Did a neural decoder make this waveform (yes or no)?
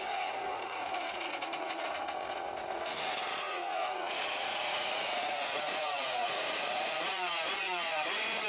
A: yes